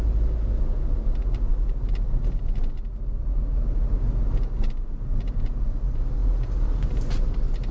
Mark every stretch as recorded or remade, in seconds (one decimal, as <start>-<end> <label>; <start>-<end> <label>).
0.0-7.7 recorded